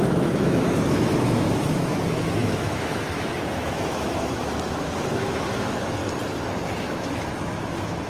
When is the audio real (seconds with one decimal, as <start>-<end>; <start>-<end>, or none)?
6.0-6.8